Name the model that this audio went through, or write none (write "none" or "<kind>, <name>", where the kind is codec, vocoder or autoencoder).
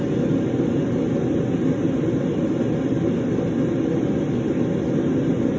none